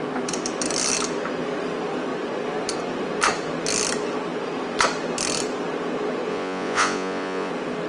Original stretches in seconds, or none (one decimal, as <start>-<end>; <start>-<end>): 0.0-6.3; 7.5-7.9